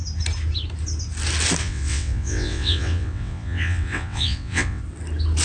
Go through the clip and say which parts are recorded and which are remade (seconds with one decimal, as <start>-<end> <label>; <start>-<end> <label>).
0.0-1.6 recorded; 1.6-4.8 remade; 4.8-5.4 recorded